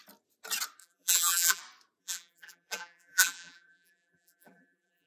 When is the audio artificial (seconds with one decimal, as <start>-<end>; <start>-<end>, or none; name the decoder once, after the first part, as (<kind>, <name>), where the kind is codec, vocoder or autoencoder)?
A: 0.8-1.6 (vocoder, BigVGAN v2); 2.0-5.1

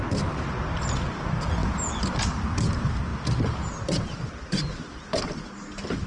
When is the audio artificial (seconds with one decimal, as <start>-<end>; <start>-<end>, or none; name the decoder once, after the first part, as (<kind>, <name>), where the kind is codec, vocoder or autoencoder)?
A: none

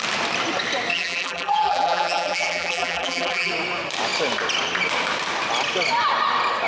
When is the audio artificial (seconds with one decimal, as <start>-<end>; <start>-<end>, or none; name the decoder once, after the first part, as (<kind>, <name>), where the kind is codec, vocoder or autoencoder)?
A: 0.9-3.5 (vocoder, BigVGAN v2)

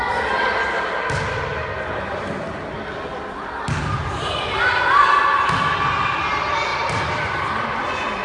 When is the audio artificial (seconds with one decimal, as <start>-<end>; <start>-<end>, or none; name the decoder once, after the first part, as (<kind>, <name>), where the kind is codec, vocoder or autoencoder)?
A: 6.7-7.4 (vocoder, BigVGAN v2)

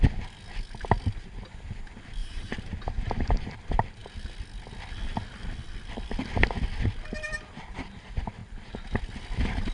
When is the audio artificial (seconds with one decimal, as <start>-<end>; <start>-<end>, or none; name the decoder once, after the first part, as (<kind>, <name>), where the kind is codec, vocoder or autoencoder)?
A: 2.2-3.6 (vocoder, BigVGAN v2)

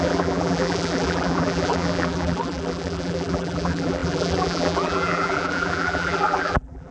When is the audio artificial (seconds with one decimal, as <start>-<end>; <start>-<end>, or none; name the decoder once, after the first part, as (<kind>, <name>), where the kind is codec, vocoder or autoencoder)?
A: 0.0-6.9 (vocoder, BigVGAN v2)

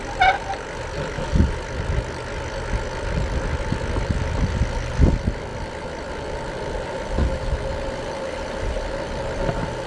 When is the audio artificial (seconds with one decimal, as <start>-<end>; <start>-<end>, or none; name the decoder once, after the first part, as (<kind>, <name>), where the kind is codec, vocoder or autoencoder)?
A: 5.5-9.5 (vocoder, BigVGAN v2)